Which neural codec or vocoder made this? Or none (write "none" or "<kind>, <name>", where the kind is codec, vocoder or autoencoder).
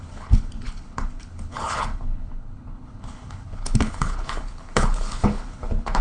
codec, HILCodec